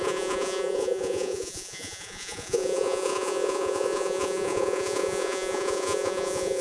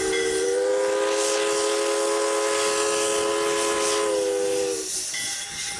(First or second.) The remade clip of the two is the first